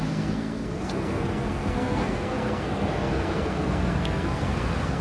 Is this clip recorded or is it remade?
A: remade